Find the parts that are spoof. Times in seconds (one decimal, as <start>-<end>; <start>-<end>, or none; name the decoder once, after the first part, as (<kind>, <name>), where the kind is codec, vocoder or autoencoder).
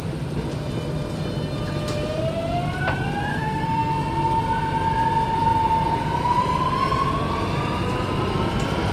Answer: 3.3-3.9 (codec, SNAC)